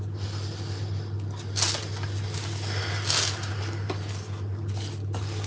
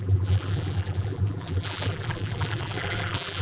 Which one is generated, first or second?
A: second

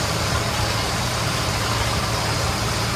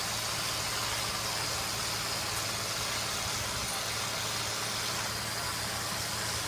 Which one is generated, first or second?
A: first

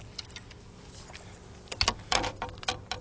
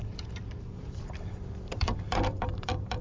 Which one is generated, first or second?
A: second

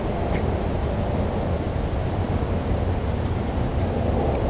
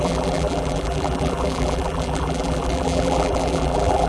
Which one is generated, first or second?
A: second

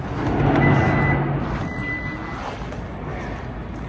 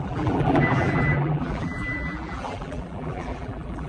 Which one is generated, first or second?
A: second